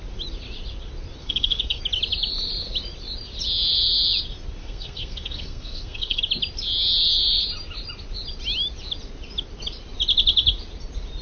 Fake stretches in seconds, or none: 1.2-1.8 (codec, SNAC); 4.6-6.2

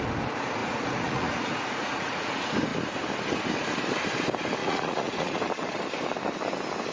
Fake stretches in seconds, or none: 0.6-2.3 (vocoder, Vocos); 4.6-5.4

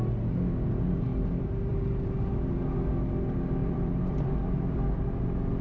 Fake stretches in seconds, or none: 1.1-2.2 (vocoder, BigVGAN v2); 3.6-5.6

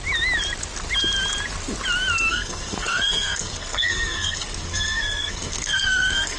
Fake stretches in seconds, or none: 2.3-6.4 (codec, SNAC)

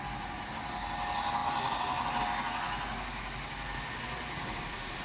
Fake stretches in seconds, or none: 1.4-2.2 (vocoder, BigVGAN v2); 4.4-5.0

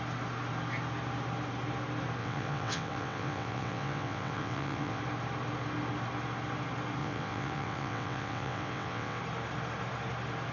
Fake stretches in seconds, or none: 2.2-5.0 (vocoder, WaveNeXt); 7.0-9.2